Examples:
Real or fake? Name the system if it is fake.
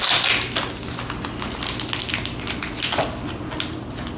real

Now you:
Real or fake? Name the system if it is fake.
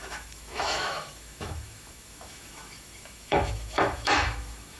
fake, autoencoder, DAC-VAE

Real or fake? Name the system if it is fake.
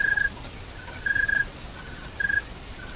real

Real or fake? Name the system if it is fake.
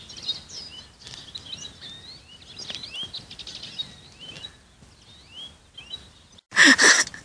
real